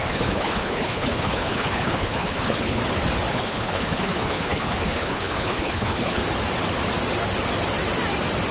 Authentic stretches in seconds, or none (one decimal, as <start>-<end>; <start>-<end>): 2.8-3.3; 6.2-8.5